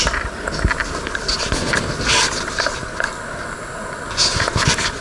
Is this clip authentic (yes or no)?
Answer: yes